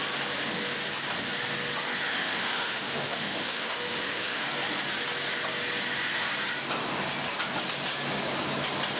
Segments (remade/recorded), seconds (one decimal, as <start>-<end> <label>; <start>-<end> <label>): 0.0-2.1 recorded; 2.1-4.4 remade; 4.4-9.0 recorded